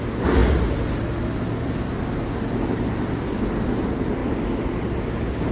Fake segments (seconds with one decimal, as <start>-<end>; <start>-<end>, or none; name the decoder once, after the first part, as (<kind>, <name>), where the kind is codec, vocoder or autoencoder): none